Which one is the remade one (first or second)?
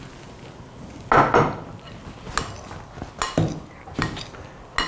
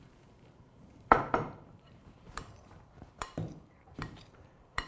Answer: second